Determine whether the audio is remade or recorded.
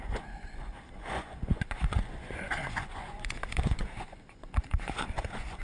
remade